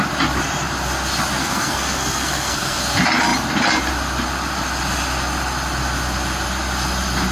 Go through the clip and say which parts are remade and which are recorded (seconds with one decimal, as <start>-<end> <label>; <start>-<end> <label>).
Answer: 0.0-1.4 recorded; 1.4-2.8 remade; 2.8-7.3 recorded